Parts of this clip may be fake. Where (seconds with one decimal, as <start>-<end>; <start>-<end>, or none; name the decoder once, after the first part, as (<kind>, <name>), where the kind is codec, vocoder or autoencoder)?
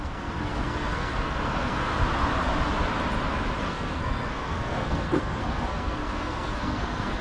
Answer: 0.0-1.9 (codec, SNAC); 3.6-7.2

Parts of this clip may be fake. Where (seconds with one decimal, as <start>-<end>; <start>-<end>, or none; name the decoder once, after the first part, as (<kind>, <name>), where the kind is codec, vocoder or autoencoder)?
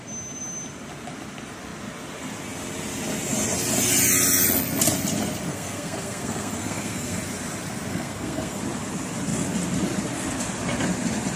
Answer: 5.5-7.2 (codec, SNAC); 7.9-8.6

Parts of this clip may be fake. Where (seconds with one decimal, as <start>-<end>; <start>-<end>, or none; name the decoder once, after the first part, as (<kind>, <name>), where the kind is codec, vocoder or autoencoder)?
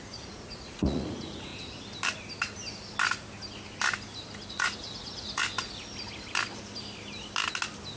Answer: 0.0-1.5 (vocoder, Vocos); 4.5-5.4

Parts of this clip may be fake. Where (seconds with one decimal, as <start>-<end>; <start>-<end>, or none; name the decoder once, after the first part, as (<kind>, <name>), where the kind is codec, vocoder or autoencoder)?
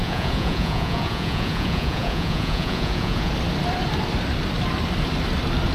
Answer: 0.0-3.3 (vocoder, Vocos)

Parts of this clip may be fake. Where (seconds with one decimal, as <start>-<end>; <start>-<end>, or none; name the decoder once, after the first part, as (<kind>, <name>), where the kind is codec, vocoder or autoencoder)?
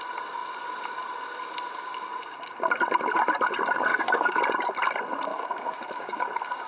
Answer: 3.9-4.4 (codec, DAC); 5.3-6.7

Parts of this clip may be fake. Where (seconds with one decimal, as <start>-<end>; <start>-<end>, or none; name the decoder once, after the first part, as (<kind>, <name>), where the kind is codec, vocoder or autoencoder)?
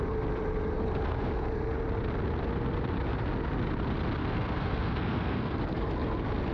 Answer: 4.2-5.6 (codec, SNAC)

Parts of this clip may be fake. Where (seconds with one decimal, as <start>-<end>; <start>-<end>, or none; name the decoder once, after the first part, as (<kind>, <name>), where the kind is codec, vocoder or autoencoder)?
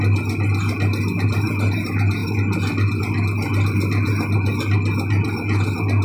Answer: none